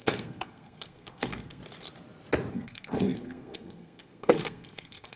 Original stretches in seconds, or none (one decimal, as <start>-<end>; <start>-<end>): 1.6-2.5